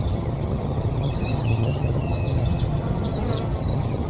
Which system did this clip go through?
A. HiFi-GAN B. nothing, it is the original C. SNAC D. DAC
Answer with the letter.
A